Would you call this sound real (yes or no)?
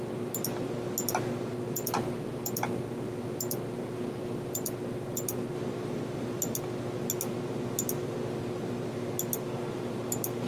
yes